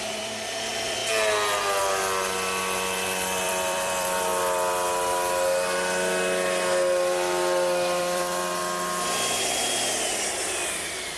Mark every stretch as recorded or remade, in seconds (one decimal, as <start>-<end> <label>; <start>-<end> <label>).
0.0-1.0 remade; 1.0-2.6 recorded; 2.6-4.3 remade; 4.3-8.0 recorded; 8.0-8.6 remade; 8.6-10.2 recorded; 10.2-11.2 remade